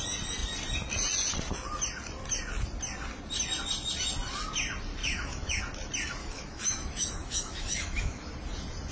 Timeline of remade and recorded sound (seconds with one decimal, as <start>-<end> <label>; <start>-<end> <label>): 0.0-5.0 recorded; 5.0-5.6 remade; 5.6-6.2 recorded; 6.2-8.3 remade; 8.3-8.9 recorded